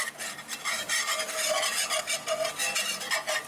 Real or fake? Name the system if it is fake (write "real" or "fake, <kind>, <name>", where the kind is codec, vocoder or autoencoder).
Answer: real